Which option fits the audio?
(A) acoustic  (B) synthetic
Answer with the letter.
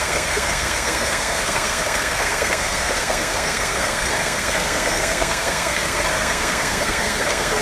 B